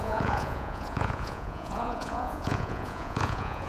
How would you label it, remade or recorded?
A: remade